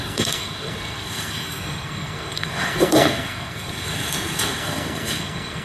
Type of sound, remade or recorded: remade